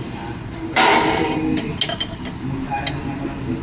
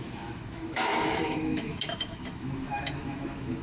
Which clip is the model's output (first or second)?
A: second